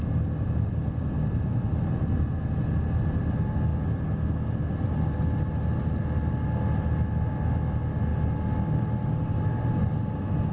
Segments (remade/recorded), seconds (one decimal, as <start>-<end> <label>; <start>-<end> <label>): 0.0-10.5 recorded